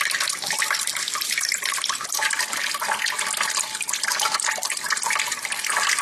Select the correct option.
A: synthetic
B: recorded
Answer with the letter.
B